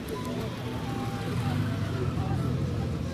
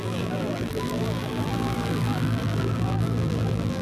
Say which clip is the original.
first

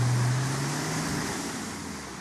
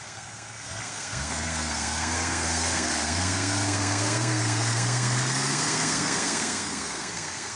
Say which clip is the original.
first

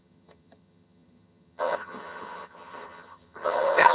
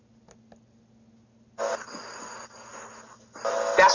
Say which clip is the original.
second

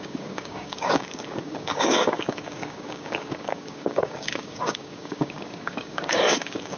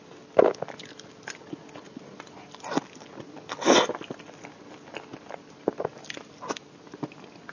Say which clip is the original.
second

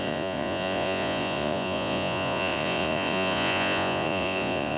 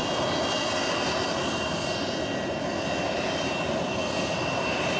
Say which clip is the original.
second